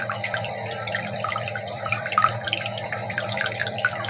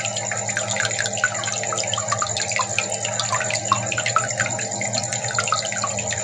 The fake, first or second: first